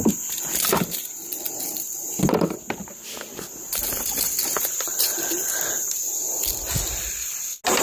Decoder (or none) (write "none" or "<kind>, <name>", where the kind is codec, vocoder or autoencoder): none